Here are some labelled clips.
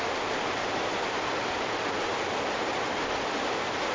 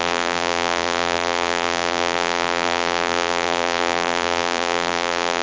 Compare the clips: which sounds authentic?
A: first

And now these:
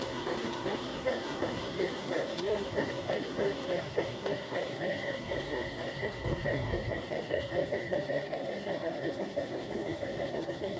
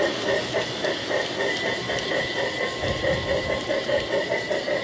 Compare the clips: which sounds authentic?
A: second